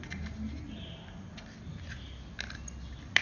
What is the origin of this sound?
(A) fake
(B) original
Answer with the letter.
B